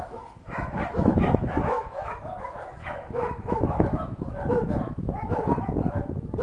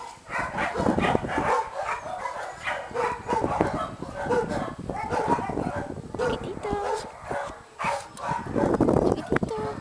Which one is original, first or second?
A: second